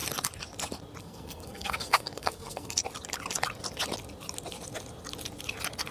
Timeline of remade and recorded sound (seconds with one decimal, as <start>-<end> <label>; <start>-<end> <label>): 0.0-1.0 recorded; 1.0-2.8 remade; 2.8-5.9 recorded